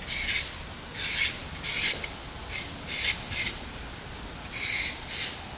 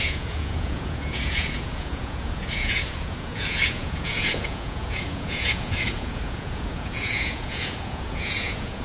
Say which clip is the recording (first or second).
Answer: first